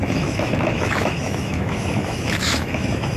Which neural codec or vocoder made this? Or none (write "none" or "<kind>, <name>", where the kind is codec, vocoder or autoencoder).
autoencoder, DAC-VAE